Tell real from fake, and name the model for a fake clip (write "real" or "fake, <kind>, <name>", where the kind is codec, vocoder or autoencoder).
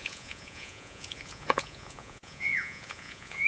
fake, vocoder, Vocos